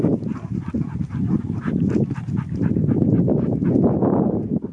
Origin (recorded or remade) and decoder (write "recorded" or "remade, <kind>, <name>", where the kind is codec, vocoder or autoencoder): recorded